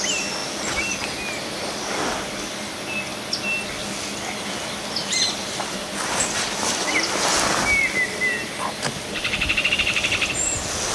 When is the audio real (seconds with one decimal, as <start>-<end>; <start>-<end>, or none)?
0.0-10.9